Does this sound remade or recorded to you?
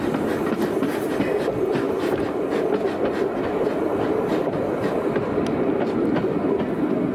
recorded